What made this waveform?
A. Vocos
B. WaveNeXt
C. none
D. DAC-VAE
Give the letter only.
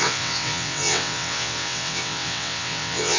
B